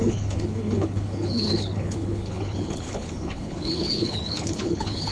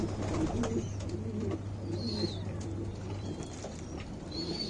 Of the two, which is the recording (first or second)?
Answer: second